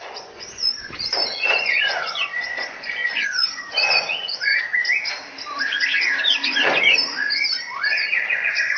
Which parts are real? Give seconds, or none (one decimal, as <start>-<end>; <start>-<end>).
4.5-6.2